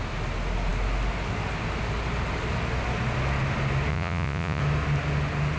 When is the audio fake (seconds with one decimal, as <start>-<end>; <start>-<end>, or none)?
3.9-4.6